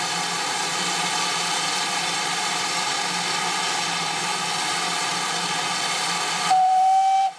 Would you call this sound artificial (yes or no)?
no